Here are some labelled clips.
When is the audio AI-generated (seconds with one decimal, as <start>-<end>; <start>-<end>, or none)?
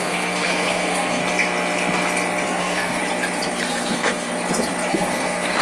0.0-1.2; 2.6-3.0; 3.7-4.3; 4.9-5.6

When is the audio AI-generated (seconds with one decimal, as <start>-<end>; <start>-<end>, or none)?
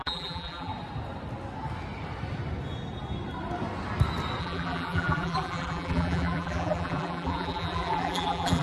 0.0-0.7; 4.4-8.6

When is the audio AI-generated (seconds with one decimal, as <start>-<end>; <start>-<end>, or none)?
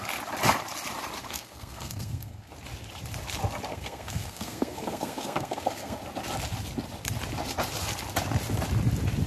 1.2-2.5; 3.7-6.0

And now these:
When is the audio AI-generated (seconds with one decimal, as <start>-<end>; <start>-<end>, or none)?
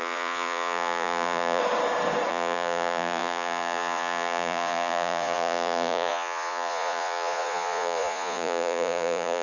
0.0-1.6; 2.3-9.4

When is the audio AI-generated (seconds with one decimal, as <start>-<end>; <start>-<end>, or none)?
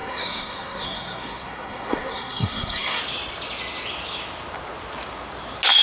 0.0-3.0